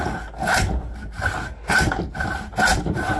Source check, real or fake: real